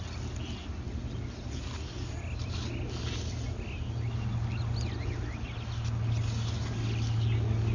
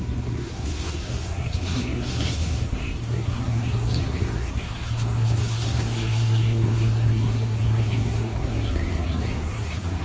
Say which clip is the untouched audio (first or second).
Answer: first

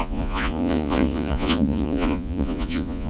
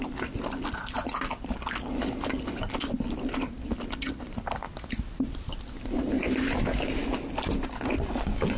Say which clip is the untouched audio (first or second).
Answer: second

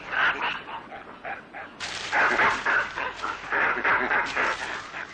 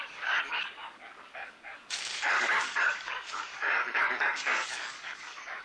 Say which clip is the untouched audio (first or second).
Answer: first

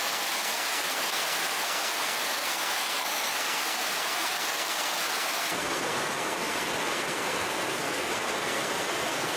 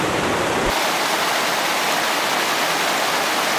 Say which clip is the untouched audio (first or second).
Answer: second